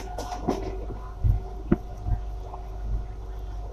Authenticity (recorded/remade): recorded